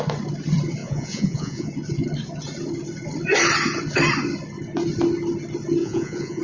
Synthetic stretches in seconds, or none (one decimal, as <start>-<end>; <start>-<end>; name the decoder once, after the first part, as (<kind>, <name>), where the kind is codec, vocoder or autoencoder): 0.8-1.7 (vocoder, Vocos); 5.8-6.4